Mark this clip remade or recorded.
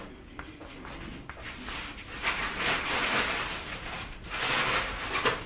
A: recorded